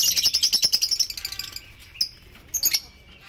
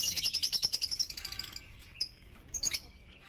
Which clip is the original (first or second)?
first